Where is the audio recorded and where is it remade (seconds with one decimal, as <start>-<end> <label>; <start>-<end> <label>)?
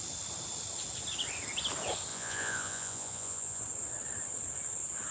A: 0.0-2.1 recorded; 2.1-3.6 remade; 3.6-5.1 recorded